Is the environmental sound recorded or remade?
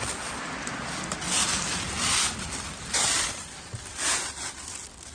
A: recorded